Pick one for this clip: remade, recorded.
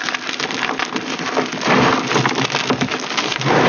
recorded